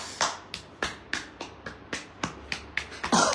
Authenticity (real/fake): real